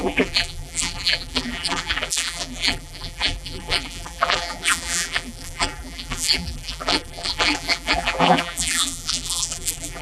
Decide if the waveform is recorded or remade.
remade